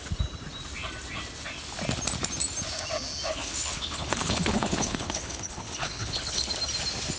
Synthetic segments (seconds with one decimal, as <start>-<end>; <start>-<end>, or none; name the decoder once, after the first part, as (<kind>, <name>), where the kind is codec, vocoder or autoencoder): 3.3-6.5 (codec, HILCodec)